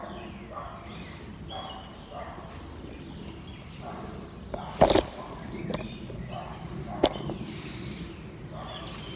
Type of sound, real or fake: real